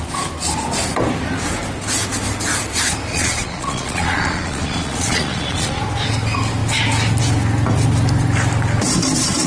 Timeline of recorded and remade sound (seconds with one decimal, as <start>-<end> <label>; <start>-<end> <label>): 0.0-3.1 recorded; 3.1-5.8 remade; 5.8-9.5 recorded